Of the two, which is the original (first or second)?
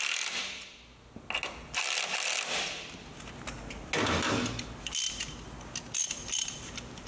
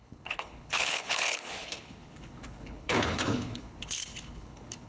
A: first